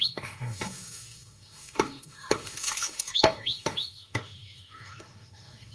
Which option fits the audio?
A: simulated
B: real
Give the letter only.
A